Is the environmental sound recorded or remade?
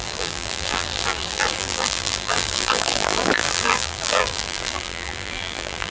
remade